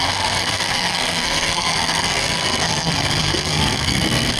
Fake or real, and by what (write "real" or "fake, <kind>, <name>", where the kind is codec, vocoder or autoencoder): fake, codec, SNAC